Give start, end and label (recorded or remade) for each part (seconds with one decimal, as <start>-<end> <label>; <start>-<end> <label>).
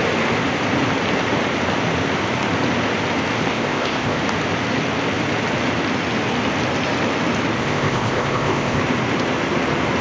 0.0-3.5 recorded; 3.5-4.2 remade; 4.2-7.6 recorded; 7.6-8.8 remade; 8.8-10.0 recorded